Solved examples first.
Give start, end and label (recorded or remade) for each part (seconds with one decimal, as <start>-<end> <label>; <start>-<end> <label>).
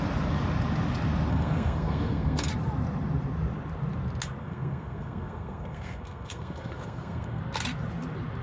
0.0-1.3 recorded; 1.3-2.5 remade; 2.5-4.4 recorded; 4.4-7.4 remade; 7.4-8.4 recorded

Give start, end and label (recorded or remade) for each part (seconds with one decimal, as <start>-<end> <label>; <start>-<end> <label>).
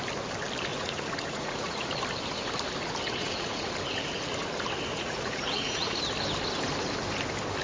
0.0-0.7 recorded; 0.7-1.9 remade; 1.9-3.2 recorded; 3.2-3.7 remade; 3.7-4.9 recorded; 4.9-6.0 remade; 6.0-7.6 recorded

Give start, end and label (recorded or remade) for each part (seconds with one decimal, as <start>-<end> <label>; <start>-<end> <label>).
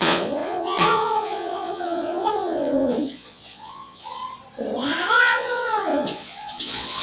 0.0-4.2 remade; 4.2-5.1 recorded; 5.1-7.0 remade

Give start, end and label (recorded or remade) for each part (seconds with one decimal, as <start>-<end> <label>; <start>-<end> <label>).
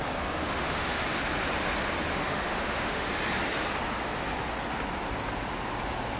0.0-0.4 recorded; 0.4-1.0 remade; 1.0-2.1 recorded; 2.1-3.1 remade; 3.1-6.2 recorded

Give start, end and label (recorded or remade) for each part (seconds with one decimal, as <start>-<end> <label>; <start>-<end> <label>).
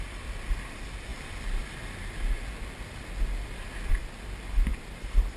0.0-4.7 recorded; 4.7-5.4 remade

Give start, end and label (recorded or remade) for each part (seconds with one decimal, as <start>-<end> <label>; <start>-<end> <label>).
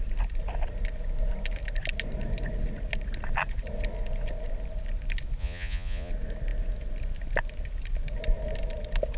0.0-5.4 recorded; 5.4-6.1 remade; 6.1-9.2 recorded